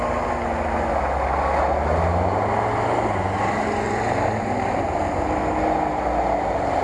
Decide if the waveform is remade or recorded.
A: recorded